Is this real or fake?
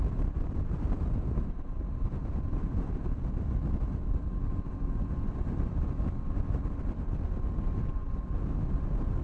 real